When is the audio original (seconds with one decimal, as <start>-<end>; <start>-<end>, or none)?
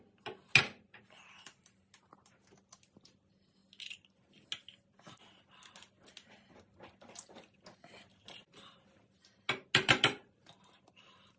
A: 0.0-11.4